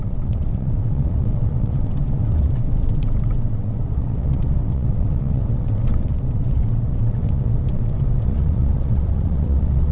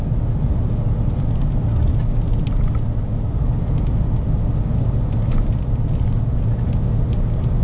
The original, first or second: second